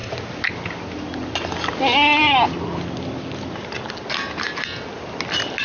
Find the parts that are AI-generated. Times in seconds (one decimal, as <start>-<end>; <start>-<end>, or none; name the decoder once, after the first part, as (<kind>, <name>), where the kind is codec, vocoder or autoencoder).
none